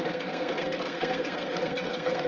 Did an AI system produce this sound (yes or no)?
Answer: yes